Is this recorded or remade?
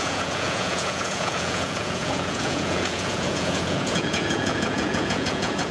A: remade